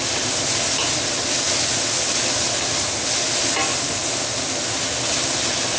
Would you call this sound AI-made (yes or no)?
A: no